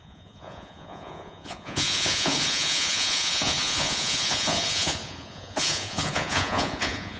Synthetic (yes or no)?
yes